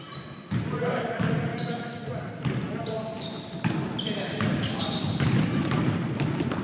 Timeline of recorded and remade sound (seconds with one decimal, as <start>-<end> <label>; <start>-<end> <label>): 0.0-1.5 recorded; 1.5-2.1 remade; 2.1-6.6 recorded